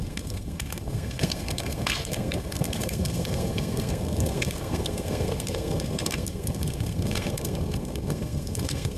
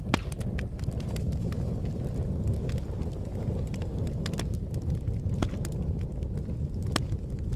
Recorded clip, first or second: second